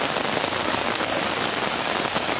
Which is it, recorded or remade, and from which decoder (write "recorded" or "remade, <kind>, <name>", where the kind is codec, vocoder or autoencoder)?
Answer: recorded